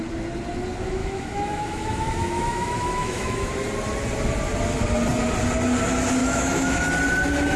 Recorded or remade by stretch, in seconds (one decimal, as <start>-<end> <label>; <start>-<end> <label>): 0.0-1.0 recorded; 1.0-3.5 remade; 3.5-6.2 recorded; 6.2-6.9 remade; 6.9-7.6 recorded

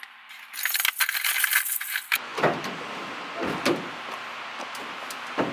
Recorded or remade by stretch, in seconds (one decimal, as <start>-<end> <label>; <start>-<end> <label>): 0.0-5.5 recorded